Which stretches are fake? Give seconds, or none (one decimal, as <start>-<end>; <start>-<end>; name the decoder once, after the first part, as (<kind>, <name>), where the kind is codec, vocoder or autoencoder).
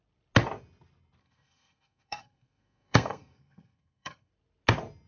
1.2-4.3 (codec, SNAC)